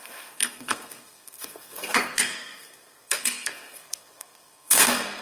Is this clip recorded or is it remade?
remade